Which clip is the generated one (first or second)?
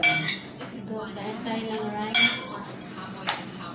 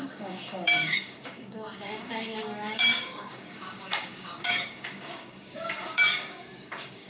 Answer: second